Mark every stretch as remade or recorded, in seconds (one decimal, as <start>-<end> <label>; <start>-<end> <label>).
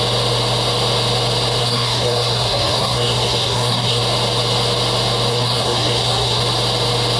0.0-1.6 recorded; 1.6-4.0 remade; 4.0-5.3 recorded; 5.3-6.4 remade; 6.4-7.2 recorded